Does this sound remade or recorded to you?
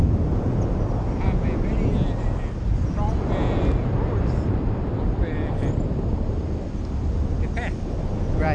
recorded